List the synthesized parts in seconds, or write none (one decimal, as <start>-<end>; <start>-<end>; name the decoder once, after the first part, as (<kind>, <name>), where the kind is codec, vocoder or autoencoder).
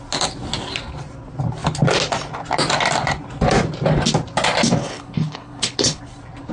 4.8-6.0 (codec, HILCodec)